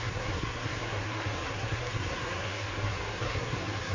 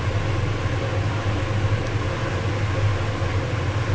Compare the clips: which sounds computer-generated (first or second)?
first